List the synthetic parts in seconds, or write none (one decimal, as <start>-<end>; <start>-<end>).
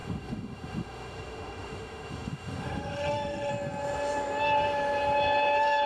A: 0.0-3.5